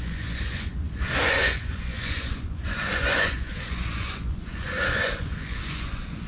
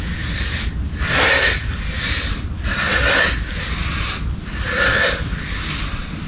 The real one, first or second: second